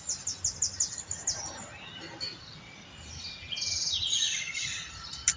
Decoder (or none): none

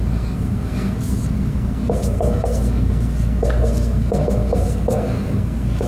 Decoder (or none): codec, SNAC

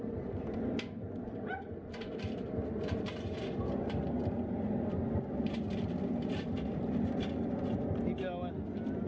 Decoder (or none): none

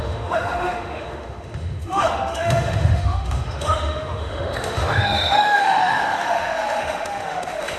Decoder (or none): autoencoder, DAC-VAE